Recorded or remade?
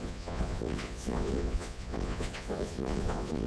remade